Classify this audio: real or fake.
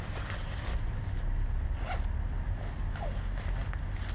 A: real